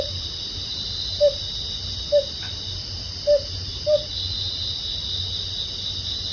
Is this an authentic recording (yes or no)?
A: yes